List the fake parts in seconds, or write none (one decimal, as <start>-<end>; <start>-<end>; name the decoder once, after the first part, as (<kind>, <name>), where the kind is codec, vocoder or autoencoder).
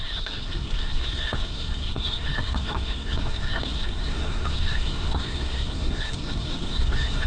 0.0-7.3 (codec, SNAC)